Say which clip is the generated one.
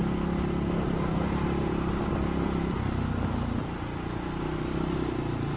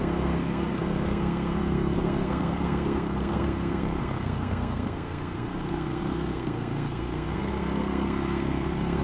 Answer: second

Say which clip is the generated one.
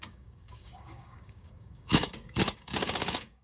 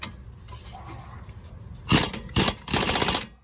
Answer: first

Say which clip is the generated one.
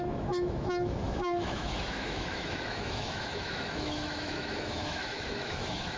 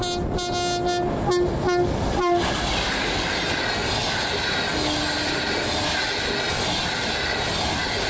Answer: first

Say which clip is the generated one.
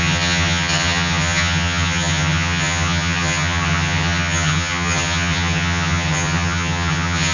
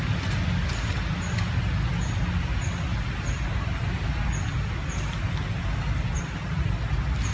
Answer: first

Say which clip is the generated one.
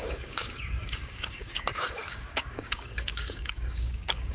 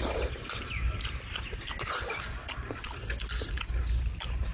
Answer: first